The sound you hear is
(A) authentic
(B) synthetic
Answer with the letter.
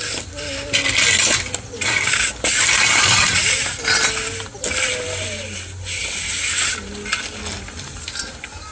A